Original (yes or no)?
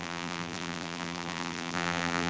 no